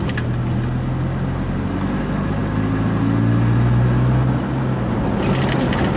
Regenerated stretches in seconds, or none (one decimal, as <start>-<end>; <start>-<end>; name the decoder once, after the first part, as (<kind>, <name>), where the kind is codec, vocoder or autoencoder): none